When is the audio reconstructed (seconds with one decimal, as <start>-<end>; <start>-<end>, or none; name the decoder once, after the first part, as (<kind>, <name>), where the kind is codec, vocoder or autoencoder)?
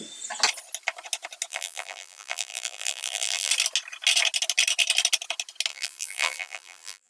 1.5-3.5 (vocoder, BigVGAN v2); 5.7-7.1